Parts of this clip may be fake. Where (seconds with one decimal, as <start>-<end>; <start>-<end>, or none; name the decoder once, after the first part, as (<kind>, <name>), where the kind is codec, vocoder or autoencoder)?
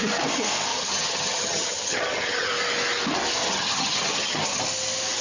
0.7-2.5 (vocoder, HiFi-GAN); 3.4-4.6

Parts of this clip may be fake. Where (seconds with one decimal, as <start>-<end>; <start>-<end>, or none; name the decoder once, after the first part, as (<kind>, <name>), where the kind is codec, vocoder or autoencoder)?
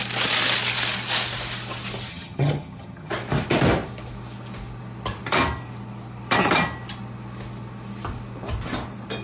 2.1-3.1 (vocoder, HiFi-GAN)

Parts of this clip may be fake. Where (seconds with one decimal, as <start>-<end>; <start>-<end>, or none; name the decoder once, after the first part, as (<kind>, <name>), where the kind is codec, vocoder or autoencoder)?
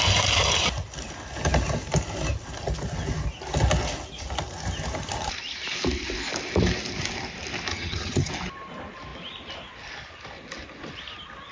7.7-8.3 (vocoder, HiFi-GAN)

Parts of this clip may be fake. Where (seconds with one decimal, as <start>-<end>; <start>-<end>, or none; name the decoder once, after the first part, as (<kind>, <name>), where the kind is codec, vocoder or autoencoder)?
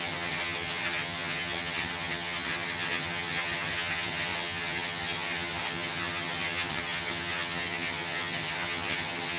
0.0-9.4 (vocoder, HiFi-GAN)